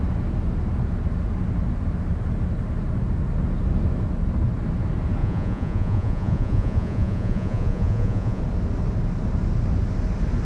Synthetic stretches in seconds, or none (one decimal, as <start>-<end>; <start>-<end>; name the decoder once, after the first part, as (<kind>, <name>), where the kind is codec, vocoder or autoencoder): 5.2-8.4 (vocoder, Vocos)